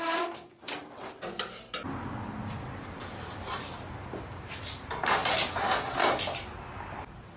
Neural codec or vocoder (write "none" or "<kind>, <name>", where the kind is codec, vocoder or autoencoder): none